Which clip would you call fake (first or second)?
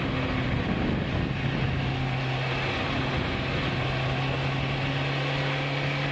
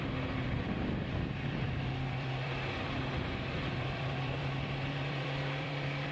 second